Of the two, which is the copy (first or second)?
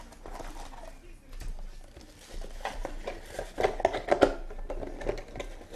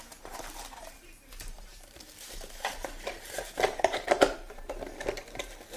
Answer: second